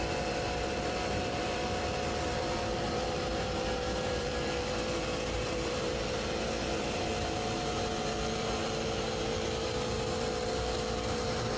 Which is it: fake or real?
fake